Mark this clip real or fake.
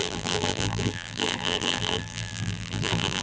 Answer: fake